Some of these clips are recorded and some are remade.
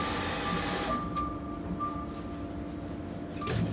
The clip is recorded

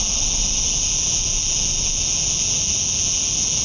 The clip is recorded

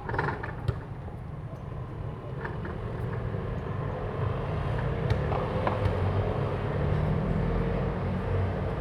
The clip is recorded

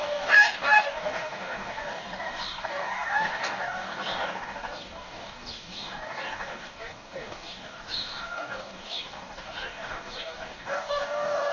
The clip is remade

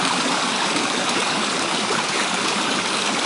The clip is remade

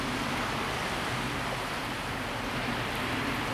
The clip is recorded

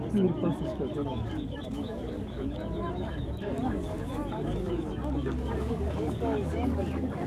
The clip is remade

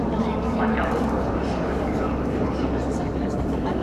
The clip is remade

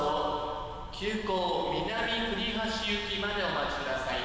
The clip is recorded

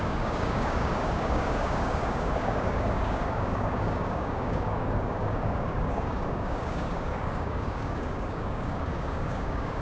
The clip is remade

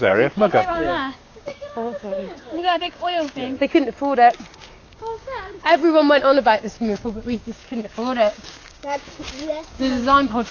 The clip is remade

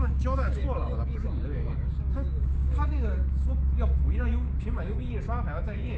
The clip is remade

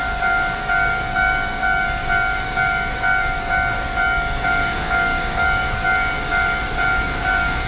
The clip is remade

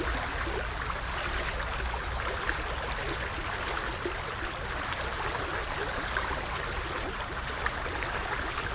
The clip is recorded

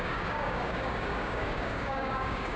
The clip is remade